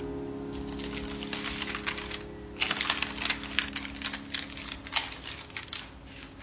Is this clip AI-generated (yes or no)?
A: no